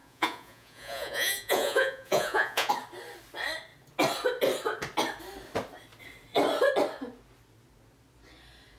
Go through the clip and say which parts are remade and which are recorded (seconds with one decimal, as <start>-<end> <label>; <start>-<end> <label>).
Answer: 0.0-2.7 remade; 2.7-8.8 recorded